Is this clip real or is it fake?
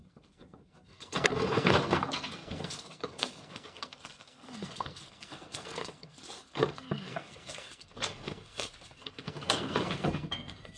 fake